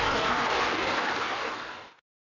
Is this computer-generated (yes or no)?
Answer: yes